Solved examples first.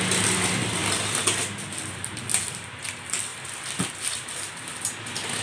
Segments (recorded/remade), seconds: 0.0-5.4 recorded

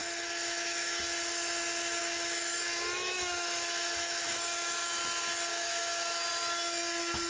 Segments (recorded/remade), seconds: 0.0-1.0 remade; 1.0-2.0 recorded; 2.0-5.0 remade; 5.0-5.5 recorded; 5.5-6.3 remade; 6.3-7.3 recorded